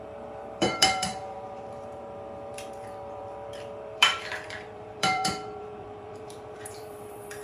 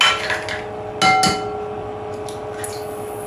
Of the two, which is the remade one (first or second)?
first